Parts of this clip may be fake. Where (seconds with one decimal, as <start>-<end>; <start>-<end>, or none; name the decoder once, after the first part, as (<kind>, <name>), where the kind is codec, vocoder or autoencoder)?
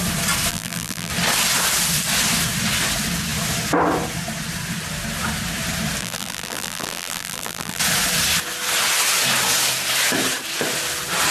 0.5-1.1 (vocoder, BigVGAN v2); 6.0-7.8